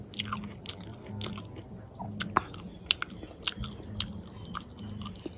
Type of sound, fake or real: real